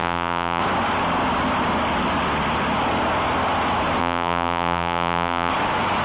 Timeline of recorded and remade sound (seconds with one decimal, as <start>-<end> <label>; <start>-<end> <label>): 0.0-0.6 remade; 0.6-4.0 recorded; 4.0-5.5 remade; 5.5-6.0 recorded